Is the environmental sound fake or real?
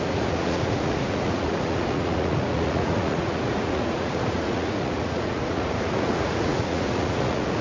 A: fake